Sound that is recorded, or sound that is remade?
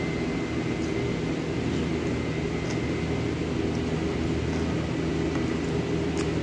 recorded